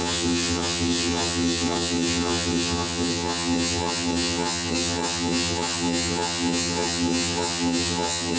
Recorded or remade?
remade